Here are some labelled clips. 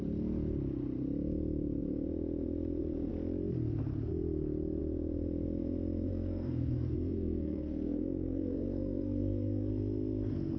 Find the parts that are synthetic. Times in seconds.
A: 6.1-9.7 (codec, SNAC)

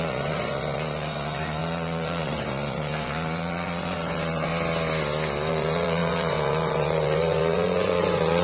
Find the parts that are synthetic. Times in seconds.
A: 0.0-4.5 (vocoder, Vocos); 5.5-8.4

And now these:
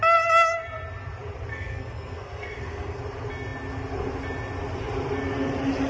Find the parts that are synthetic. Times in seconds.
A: 1.5-3.0 (codec, SNAC)

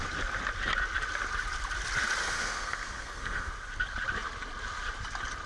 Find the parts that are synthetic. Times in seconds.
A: 2.2-3.5 (codec, SNAC)

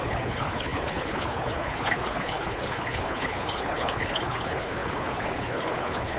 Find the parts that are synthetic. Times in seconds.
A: 0.0-6.2 (codec, HILCodec)

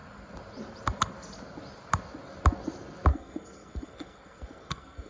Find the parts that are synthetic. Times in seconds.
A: 3.1-5.1 (codec, SNAC)

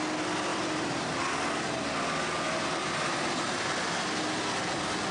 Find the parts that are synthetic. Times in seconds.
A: 0.5-1.3 (vocoder, BigVGAN v2); 2.8-3.9

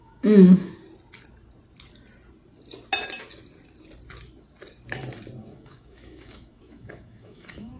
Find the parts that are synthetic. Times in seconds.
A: 0.0-0.7 (autoencoder, DAC-VAE); 5.4-7.8